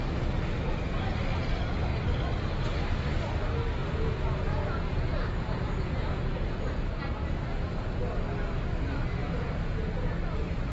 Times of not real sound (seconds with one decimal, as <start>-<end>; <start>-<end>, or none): 3.8-8.0; 9.2-10.1